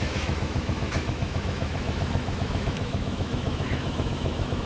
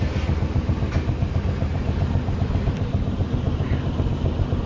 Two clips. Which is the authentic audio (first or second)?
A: second